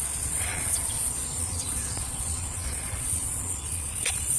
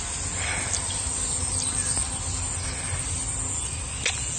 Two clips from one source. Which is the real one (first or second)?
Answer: second